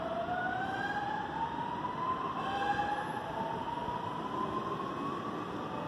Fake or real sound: real